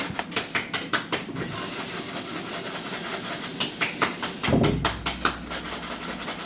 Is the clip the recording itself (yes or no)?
yes